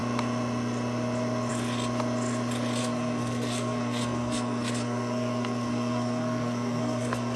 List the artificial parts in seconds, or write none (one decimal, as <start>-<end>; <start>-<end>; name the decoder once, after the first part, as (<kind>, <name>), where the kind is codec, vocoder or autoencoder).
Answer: 2.8-7.4 (codec, SNAC)